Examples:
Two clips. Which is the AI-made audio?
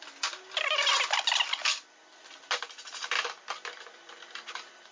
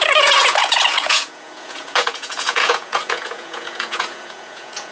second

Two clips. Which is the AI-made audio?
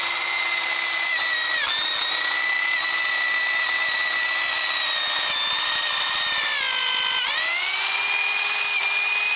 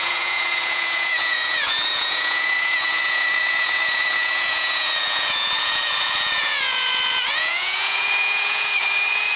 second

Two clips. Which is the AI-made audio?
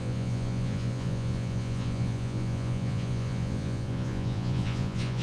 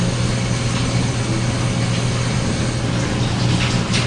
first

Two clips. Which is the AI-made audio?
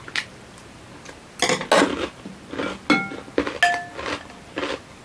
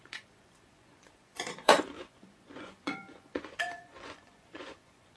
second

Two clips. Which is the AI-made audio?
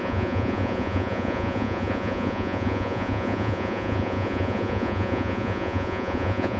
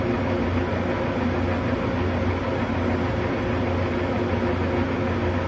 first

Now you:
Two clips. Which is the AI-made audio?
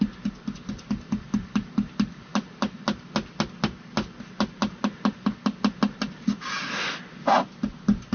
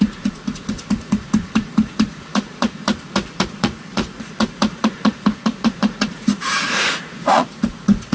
second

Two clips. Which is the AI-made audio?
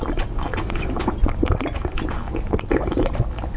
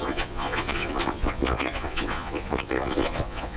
second